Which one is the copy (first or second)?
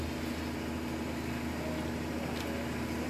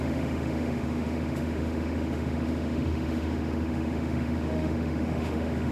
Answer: second